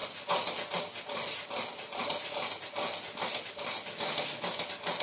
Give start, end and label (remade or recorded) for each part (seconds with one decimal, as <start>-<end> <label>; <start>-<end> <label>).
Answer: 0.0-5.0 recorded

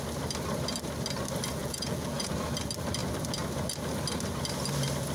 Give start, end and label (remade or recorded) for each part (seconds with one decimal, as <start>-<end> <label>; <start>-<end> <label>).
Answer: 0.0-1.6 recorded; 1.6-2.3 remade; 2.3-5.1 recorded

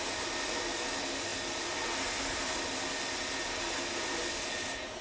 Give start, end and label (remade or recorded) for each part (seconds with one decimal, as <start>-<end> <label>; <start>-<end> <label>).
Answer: 0.0-5.0 recorded